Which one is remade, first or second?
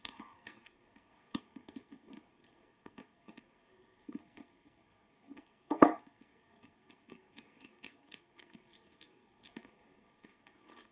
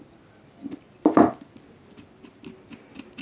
first